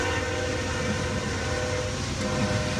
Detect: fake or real real